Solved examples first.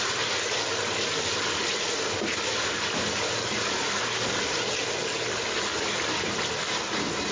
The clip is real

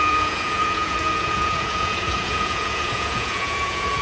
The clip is fake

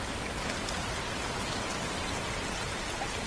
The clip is real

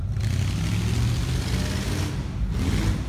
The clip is real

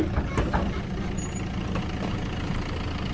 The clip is real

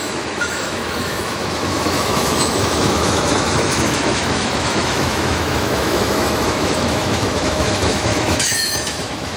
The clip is fake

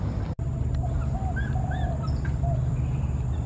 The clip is fake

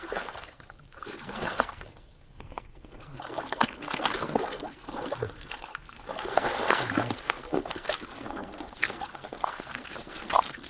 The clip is fake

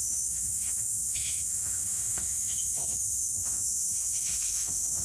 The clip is fake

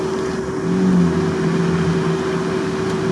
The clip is real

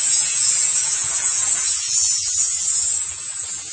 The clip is fake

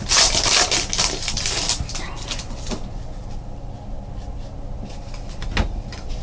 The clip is real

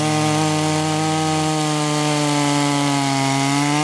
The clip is real